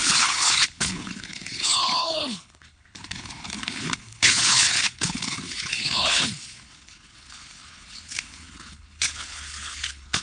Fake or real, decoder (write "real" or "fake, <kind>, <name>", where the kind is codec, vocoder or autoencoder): fake, codec, HILCodec